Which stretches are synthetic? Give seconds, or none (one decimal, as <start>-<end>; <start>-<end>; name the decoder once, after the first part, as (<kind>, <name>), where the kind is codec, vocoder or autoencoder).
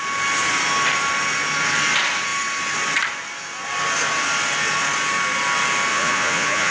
5.9-6.7 (vocoder, Vocos)